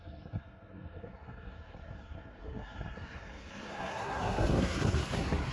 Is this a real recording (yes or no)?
no